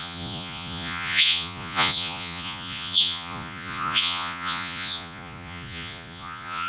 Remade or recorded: remade